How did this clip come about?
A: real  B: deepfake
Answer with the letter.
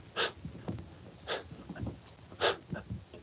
A